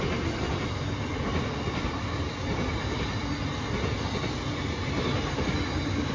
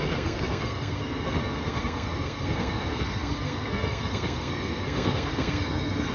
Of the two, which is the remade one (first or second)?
second